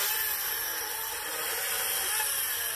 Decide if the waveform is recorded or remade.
recorded